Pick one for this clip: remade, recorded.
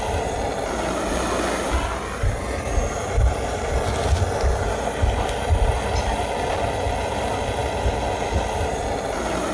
recorded